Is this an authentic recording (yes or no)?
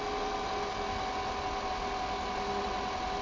yes